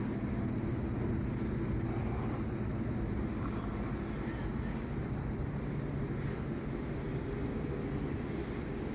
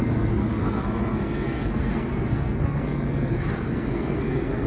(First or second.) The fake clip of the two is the second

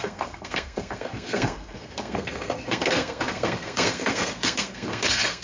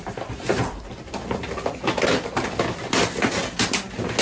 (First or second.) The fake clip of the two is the first